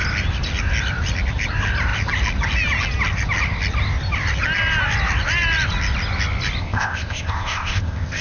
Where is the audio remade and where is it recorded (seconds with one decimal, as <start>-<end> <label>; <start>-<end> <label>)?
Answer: 0.0-6.6 recorded; 6.6-8.2 remade